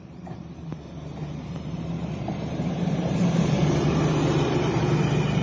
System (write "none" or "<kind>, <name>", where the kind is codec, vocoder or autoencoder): vocoder, BigVGAN v2